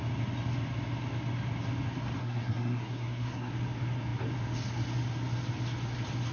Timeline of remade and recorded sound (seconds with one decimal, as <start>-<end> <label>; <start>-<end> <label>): 0.0-2.2 recorded; 2.2-3.5 remade; 3.5-6.3 recorded